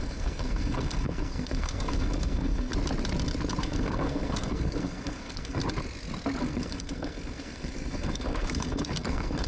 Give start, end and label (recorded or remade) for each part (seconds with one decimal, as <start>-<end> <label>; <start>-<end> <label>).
0.0-2.7 remade; 2.7-3.6 recorded; 3.6-5.6 remade; 5.6-6.4 recorded; 6.4-9.5 remade